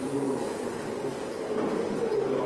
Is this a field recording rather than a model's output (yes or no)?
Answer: yes